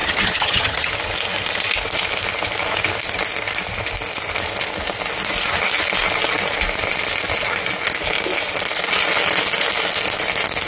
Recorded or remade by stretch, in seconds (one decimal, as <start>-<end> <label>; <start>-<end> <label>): 0.0-0.9 remade; 0.9-10.7 recorded